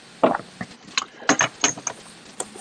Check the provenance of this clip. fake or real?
real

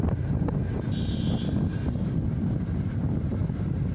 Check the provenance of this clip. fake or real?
real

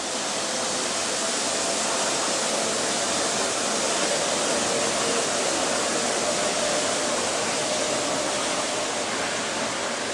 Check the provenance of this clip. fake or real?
real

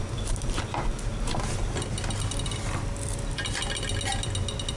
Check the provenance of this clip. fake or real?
real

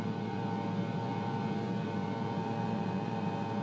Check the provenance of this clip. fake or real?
fake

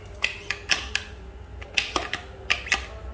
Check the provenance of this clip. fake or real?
real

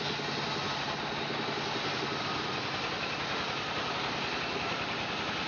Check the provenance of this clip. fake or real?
real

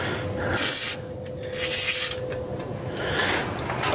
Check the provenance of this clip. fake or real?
real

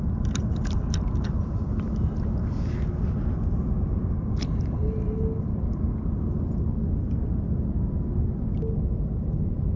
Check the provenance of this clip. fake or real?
real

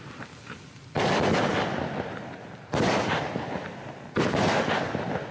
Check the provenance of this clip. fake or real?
real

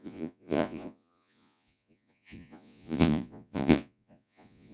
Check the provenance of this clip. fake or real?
fake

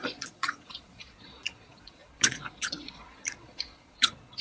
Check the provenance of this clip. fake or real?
fake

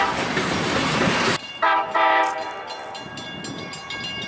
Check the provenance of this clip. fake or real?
real